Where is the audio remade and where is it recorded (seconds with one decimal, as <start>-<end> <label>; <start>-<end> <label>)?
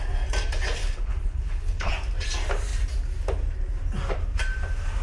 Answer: 0.0-0.8 recorded; 0.8-1.9 remade; 1.9-5.0 recorded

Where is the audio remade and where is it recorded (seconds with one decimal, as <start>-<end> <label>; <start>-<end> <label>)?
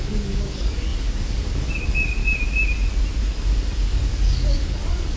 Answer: 0.0-2.2 remade; 2.2-3.2 recorded; 3.2-5.2 remade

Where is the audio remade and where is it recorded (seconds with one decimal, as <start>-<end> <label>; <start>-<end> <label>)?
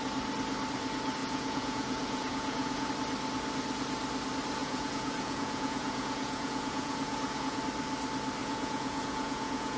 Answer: 0.0-1.2 recorded; 1.2-2.9 remade; 2.9-4.6 recorded; 4.6-7.6 remade; 7.6-8.4 recorded; 8.4-9.8 remade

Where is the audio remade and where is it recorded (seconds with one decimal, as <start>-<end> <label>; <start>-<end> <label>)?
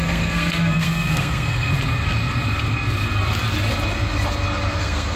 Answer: 0.0-1.7 remade; 1.7-4.8 recorded; 4.8-5.2 remade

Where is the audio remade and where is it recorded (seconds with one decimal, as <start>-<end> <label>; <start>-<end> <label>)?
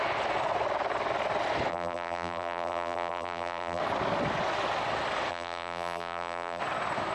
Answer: 0.0-1.7 recorded; 1.7-3.8 remade; 3.8-5.3 recorded; 5.3-6.6 remade; 6.6-7.1 recorded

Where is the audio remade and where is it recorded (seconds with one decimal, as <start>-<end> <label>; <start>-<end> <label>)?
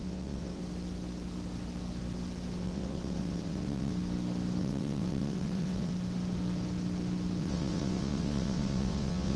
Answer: 0.0-0.6 remade; 0.6-2.6 recorded; 2.6-3.9 remade; 3.9-4.6 recorded; 4.6-5.9 remade; 5.9-7.4 recorded; 7.4-9.4 remade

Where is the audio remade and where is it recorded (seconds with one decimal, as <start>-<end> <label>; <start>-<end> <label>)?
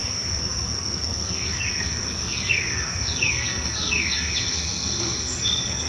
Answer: 0.0-5.9 remade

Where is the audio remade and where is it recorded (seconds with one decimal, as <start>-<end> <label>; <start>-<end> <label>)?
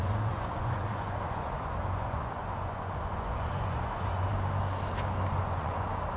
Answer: 0.0-4.3 remade; 4.3-5.4 recorded; 5.4-6.2 remade